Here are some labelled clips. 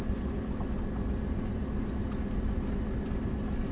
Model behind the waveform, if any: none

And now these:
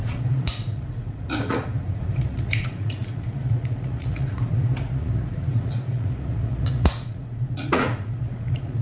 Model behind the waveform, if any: vocoder, Vocos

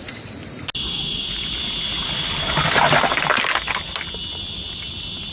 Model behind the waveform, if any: none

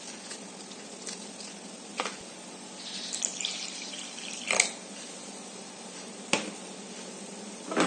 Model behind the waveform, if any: none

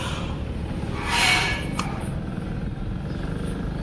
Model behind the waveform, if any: none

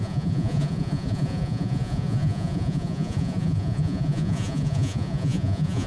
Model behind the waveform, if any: vocoder, Vocos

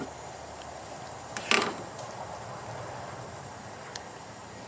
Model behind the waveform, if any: none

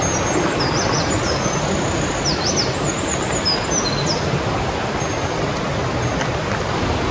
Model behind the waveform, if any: none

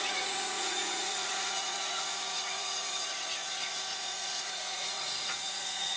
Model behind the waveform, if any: vocoder, Vocos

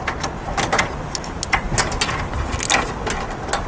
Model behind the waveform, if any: none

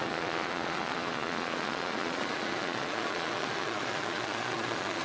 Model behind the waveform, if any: vocoder, Vocos